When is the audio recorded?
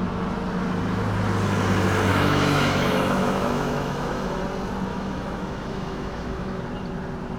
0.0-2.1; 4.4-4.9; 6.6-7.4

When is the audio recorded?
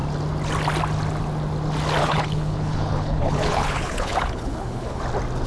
0.0-2.0; 5.0-5.5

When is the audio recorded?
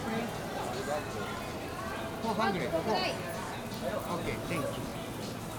0.0-5.6